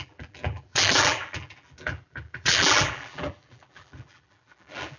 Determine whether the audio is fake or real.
fake